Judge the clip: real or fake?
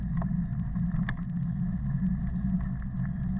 real